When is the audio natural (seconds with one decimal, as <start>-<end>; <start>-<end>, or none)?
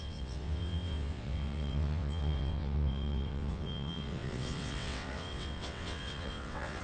none